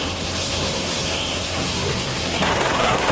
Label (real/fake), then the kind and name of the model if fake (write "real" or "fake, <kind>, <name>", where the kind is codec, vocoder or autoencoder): fake, codec, SNAC